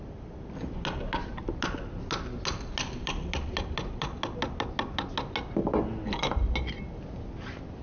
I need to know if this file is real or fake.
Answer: real